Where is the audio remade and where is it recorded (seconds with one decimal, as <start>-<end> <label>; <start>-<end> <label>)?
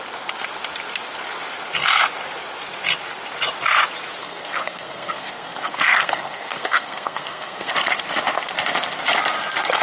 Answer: 0.0-4.2 recorded; 4.2-7.7 remade; 7.7-9.8 recorded